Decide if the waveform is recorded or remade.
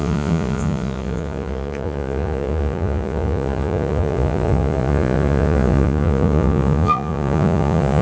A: remade